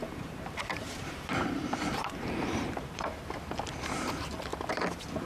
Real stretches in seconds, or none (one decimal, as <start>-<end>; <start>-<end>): 3.1-5.3